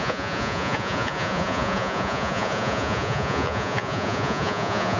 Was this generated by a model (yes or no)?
yes